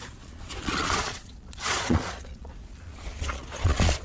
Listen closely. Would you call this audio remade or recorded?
remade